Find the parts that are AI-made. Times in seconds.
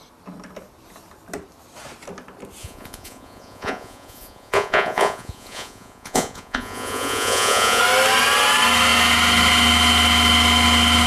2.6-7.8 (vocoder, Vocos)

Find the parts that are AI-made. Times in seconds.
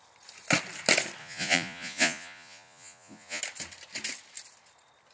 1.2-3.4 (vocoder, Vocos)